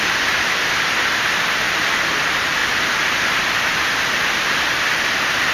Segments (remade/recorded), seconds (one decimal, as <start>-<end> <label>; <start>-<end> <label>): 0.0-5.5 recorded